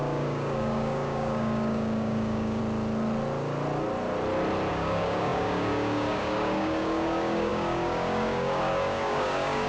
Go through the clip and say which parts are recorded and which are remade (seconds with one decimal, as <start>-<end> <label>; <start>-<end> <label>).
0.0-2.6 remade; 2.6-4.7 recorded; 4.7-9.7 remade